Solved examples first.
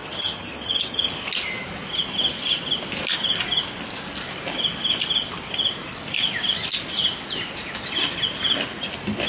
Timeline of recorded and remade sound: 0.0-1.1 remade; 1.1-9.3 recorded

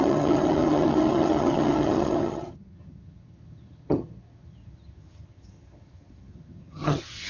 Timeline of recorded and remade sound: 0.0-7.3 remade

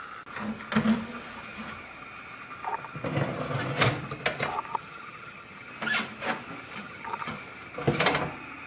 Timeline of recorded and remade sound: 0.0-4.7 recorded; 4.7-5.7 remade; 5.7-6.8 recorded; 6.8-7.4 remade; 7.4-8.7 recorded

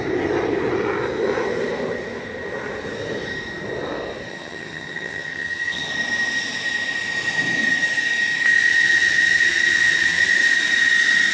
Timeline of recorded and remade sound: 0.0-4.3 recorded; 4.3-5.9 remade; 5.9-8.7 recorded; 8.7-10.3 remade; 10.3-11.3 recorded

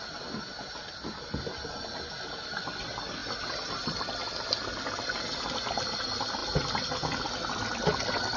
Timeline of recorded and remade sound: 0.0-8.4 recorded

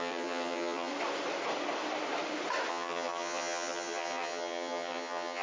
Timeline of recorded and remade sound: 0.0-0.9 remade; 0.9-2.7 recorded; 2.7-5.4 remade